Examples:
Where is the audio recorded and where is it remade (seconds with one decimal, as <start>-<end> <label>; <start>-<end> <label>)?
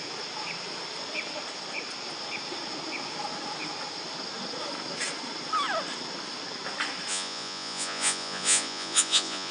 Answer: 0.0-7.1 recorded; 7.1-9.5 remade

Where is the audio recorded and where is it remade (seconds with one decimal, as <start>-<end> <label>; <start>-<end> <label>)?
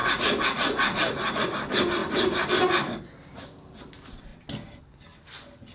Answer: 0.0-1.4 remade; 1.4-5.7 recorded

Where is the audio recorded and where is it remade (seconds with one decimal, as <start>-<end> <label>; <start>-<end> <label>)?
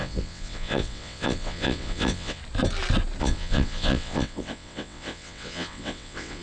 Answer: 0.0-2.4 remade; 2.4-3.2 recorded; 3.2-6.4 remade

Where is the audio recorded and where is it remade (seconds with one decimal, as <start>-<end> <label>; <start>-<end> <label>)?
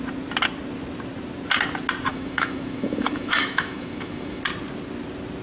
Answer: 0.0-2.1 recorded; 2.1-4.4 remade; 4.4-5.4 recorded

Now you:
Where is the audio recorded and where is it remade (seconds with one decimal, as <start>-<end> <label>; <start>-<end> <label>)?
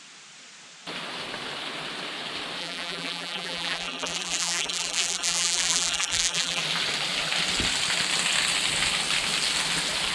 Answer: 0.0-2.6 recorded; 2.6-6.6 remade; 6.6-10.1 recorded